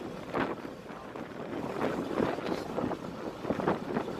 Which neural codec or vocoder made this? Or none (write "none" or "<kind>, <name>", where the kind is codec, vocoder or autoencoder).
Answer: none